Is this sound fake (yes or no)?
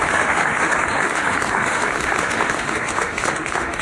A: yes